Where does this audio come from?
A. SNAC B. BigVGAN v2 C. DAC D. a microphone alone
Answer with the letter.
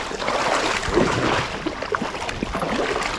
D